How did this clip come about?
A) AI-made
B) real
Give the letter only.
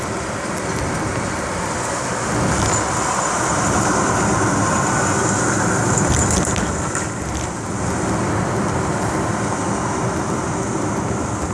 B